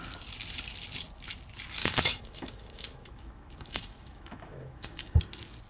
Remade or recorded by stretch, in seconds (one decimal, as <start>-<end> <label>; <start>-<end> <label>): 0.0-1.8 recorded; 1.8-5.2 remade; 5.2-5.7 recorded

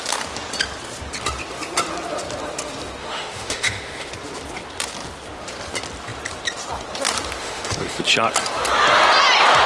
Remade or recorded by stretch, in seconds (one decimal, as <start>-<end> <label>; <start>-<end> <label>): 0.0-3.0 recorded; 3.0-4.1 remade; 4.1-7.4 recorded; 7.4-8.0 remade; 8.0-9.7 recorded